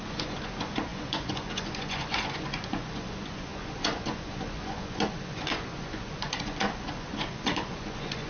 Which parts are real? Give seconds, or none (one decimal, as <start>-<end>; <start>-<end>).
none